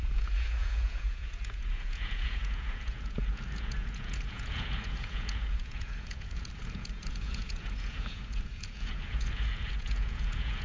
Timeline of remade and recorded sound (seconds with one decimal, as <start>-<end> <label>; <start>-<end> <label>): 0.0-10.6 remade